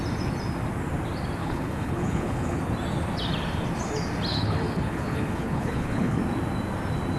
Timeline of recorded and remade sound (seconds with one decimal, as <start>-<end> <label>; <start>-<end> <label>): 0.0-1.4 recorded; 1.4-2.6 remade; 2.6-4.3 recorded; 4.3-6.2 remade; 6.2-7.2 recorded

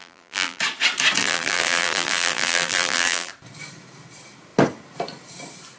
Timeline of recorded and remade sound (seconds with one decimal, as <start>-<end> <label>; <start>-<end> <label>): 0.0-0.6 remade; 0.6-1.2 recorded; 1.2-3.3 remade; 3.3-5.8 recorded

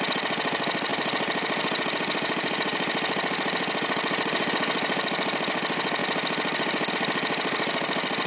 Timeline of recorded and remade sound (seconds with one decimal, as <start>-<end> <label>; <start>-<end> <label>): 0.0-8.3 recorded

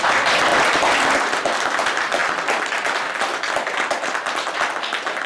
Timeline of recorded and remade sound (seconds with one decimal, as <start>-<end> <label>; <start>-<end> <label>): 0.0-5.3 recorded